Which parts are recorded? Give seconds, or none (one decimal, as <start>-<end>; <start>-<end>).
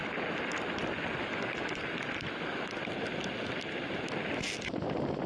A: 0.0-5.3